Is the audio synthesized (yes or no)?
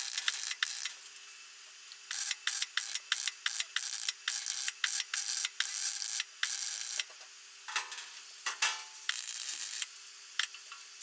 no